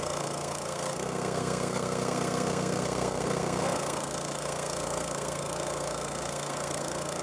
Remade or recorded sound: remade